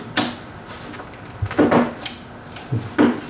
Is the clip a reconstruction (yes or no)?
no